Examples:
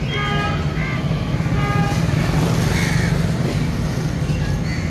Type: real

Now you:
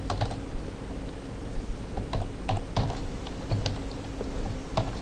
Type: real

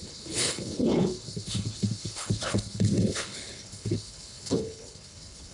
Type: fake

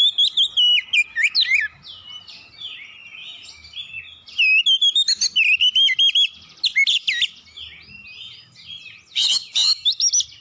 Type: real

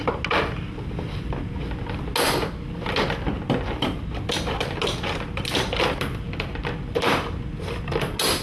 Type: real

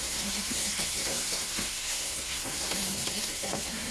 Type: fake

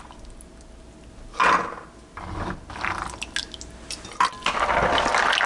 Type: real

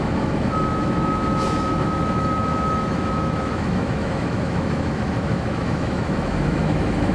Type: fake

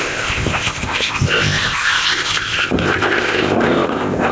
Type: fake